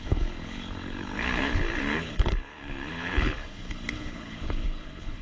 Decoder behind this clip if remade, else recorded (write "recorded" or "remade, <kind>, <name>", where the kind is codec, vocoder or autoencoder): remade, codec, HILCodec